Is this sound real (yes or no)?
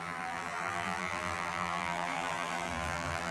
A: no